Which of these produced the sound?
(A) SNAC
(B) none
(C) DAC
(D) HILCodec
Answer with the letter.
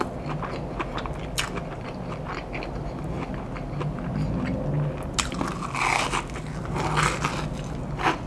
B